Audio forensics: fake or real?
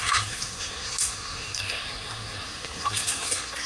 fake